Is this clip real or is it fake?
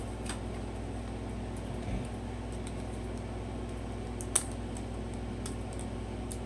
real